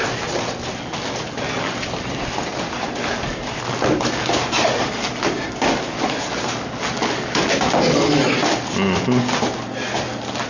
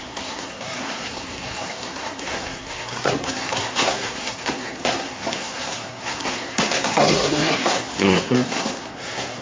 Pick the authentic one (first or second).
first